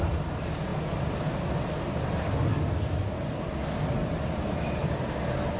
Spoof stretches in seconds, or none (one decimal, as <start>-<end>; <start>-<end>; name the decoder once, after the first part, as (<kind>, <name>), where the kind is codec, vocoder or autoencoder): none